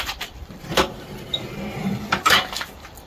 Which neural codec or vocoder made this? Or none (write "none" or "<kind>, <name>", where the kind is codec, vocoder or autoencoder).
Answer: vocoder, BigVGAN v2